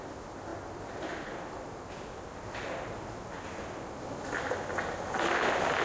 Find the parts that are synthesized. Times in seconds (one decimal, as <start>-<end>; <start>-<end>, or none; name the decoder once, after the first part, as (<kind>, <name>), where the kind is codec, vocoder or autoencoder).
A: none